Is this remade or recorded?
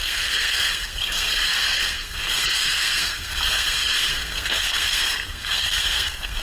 remade